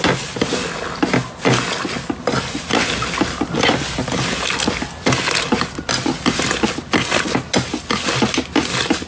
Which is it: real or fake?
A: real